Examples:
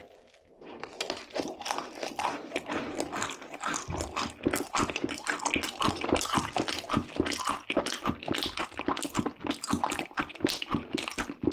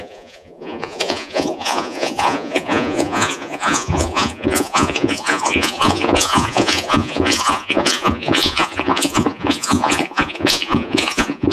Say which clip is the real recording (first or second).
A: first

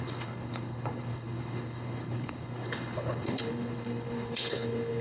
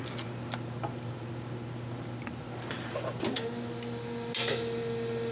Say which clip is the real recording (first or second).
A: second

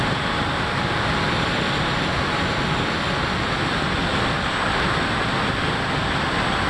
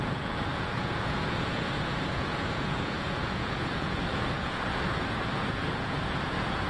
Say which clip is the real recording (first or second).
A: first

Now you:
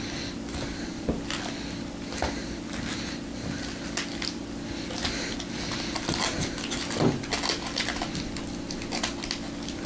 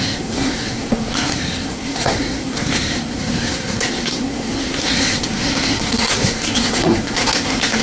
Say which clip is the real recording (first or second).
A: first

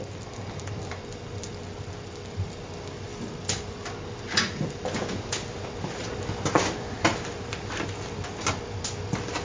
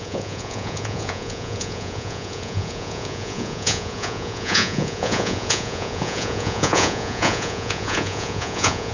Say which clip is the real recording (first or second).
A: first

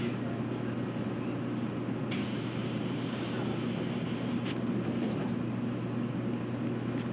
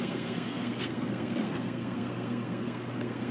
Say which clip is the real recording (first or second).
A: first